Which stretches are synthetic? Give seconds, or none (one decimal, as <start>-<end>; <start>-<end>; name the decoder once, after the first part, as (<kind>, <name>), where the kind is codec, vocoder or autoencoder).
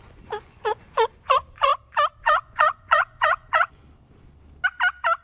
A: 0.0-1.7 (vocoder, Vocos); 2.2-3.8